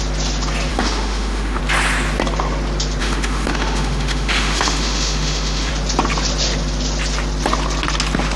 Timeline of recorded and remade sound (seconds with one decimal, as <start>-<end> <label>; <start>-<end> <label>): 0.0-0.7 recorded; 0.7-1.6 remade; 1.6-3.0 recorded; 3.0-5.7 remade; 5.7-8.4 recorded